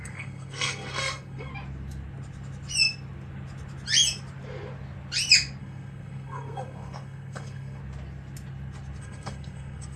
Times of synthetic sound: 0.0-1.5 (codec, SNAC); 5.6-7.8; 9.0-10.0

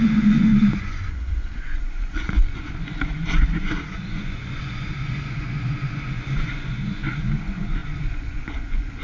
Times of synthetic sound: 0.0-9.0 (vocoder, Vocos)

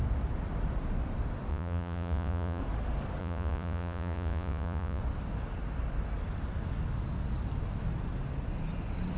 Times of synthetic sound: 1.5-2.6 (vocoder, Vocos); 3.2-5.0

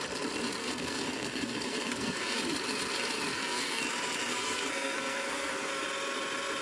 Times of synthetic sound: 0.6-2.4 (codec, SNAC); 3.3-3.8; 4.3-5.7

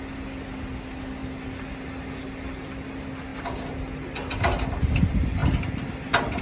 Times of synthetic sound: none

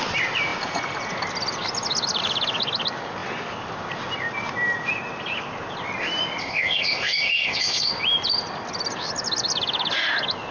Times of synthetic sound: 6.4-7.9 (codec, ZipCodec)

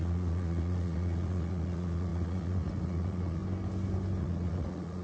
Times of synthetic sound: 0.0-3.4 (vocoder, Vocos); 4.2-5.0

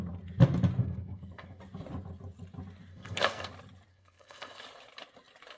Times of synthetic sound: 0.8-1.6 (codec, SNAC); 2.9-3.5; 3.9-4.6